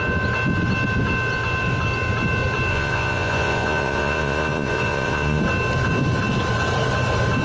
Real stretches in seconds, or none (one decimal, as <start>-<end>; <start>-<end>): 0.0-2.7; 5.4-7.4